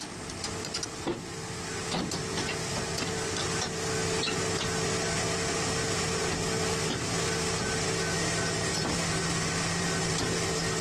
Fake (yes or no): no